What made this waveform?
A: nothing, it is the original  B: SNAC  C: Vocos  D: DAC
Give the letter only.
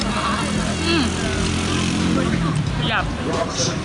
A